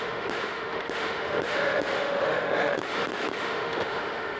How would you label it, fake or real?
fake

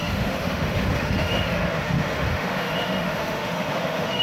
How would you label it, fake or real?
fake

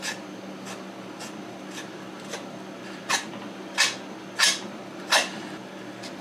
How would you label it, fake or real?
real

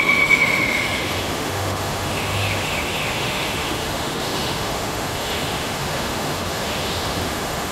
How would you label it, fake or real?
fake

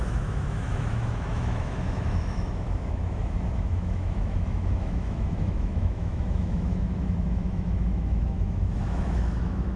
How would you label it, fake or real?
fake